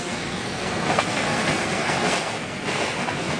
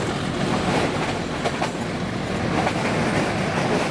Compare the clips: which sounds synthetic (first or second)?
first